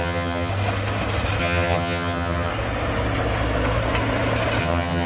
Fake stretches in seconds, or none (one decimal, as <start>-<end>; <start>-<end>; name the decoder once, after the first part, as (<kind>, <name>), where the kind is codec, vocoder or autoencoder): 0.0-0.5 (vocoder, HiFi-GAN); 1.4-2.5; 4.6-5.1